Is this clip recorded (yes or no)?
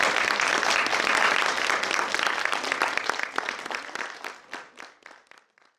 yes